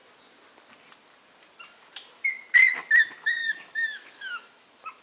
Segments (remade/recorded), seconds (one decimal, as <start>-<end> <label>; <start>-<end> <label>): 0.0-3.4 recorded; 3.4-5.0 remade